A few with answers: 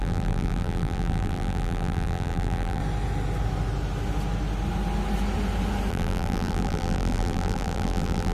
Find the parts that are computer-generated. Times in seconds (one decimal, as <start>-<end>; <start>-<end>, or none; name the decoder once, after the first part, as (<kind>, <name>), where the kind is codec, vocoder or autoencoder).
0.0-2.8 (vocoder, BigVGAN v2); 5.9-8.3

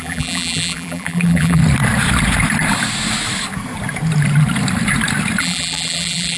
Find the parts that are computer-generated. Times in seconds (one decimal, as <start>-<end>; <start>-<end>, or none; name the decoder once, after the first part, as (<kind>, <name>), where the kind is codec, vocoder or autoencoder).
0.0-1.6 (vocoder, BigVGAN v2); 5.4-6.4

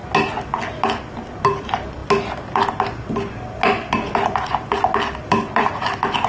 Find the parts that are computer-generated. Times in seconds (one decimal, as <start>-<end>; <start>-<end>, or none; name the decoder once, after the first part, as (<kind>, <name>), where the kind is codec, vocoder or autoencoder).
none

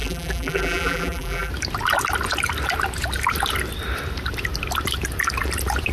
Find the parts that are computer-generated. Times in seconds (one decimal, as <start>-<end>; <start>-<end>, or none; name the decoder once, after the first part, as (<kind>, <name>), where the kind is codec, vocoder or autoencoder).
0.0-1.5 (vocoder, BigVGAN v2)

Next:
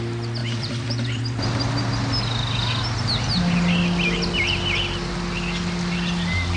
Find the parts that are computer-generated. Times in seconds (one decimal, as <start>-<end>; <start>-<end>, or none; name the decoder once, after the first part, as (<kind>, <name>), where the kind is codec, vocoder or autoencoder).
0.4-1.8 (vocoder, BigVGAN v2)